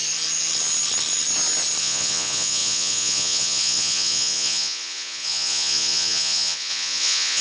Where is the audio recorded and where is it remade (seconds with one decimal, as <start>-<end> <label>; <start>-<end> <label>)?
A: 0.0-1.8 recorded; 1.8-7.4 remade